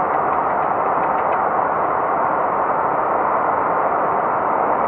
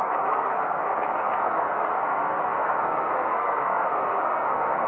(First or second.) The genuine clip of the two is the first